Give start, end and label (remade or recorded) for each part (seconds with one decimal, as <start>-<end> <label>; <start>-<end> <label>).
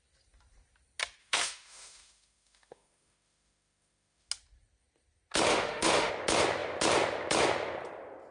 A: 0.0-1.2 recorded; 1.2-4.3 remade; 4.3-5.5 recorded; 5.5-6.1 remade; 6.1-8.3 recorded